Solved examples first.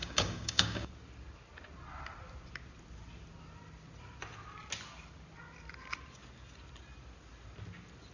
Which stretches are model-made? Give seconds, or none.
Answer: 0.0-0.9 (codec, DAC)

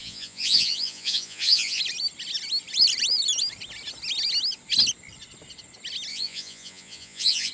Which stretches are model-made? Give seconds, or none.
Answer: 0.0-1.8 (vocoder, Vocos); 6.1-7.5

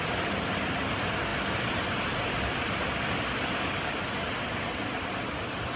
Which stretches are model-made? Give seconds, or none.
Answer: none

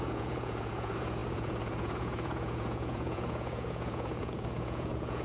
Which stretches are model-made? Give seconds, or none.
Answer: 0.0-5.2 (vocoder, Vocos)

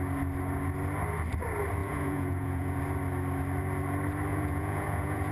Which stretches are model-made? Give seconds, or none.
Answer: 1.8-2.8 (vocoder, Vocos); 4.3-5.3